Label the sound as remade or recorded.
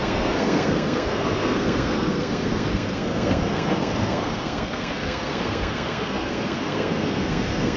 remade